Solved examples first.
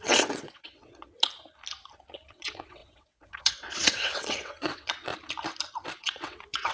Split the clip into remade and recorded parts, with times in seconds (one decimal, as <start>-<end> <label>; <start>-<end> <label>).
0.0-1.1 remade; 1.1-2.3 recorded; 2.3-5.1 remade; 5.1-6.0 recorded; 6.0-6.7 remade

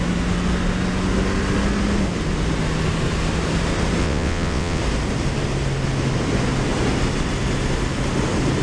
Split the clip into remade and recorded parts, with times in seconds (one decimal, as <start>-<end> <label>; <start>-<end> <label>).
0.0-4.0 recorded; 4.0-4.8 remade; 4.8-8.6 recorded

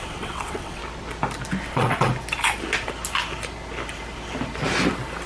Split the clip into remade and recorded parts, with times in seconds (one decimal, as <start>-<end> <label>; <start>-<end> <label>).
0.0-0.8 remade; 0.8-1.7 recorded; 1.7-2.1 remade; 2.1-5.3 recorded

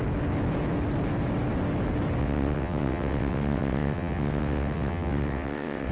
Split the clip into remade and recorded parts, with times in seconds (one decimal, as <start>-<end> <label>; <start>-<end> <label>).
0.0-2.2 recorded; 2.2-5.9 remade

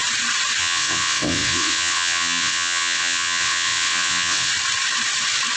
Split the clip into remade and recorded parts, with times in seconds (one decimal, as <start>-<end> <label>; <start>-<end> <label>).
0.0-0.6 recorded; 0.6-4.5 remade; 4.5-5.6 recorded

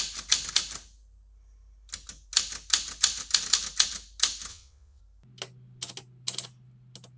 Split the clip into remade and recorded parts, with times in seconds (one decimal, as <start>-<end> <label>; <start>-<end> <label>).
0.0-4.5 recorded; 4.5-5.0 remade; 5.0-7.2 recorded